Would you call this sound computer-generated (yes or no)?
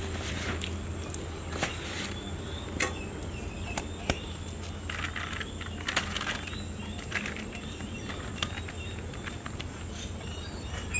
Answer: no